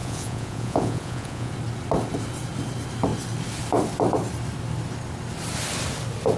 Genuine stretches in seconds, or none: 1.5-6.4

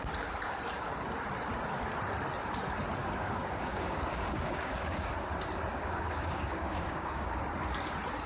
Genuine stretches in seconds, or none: 0.0-3.0; 5.1-5.7; 7.4-8.3

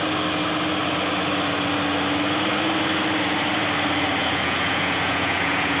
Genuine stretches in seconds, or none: 0.0-4.2

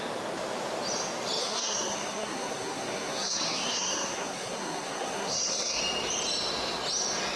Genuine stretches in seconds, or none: 0.0-1.4; 5.8-7.4

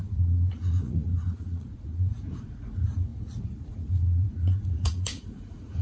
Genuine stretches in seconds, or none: none

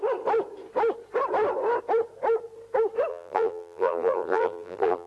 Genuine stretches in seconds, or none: 0.0-3.1

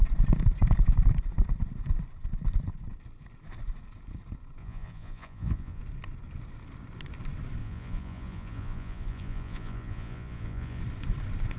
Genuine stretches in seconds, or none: 0.0-4.6; 5.8-7.6; 10.8-11.6